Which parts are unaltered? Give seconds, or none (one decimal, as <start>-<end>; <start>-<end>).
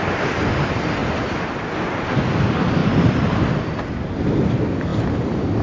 0.0-1.0; 1.7-2.8; 3.5-4.9